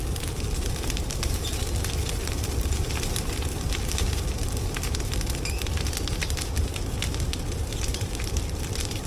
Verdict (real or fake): fake